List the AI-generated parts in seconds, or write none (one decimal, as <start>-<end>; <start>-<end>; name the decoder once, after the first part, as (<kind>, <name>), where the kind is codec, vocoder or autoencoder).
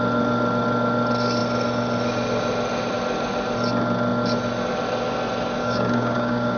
5.6-6.6 (codec, DAC)